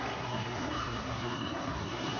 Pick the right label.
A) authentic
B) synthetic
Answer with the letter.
B